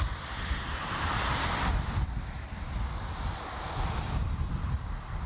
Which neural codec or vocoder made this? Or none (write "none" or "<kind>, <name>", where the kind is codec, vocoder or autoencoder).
vocoder, BigVGAN v2